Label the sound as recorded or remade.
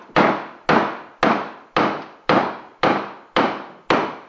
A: recorded